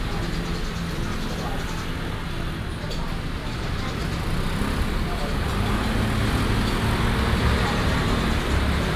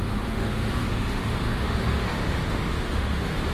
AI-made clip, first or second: second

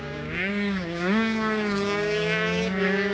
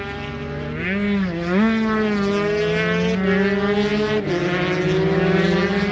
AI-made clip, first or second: first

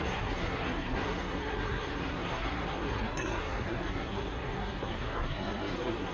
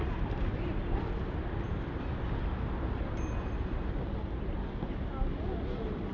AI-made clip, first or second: first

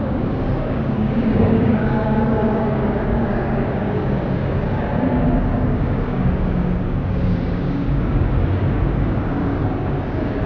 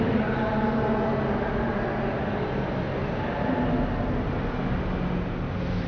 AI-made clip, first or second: first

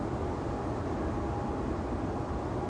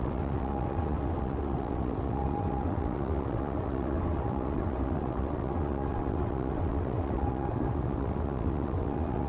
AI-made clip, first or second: second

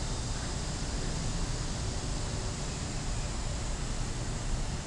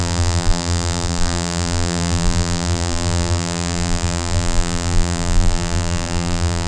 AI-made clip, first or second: second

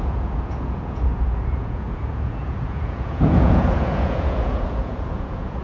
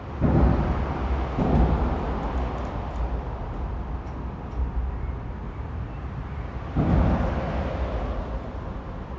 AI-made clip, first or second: first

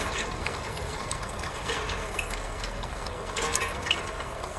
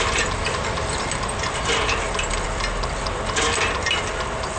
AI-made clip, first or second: first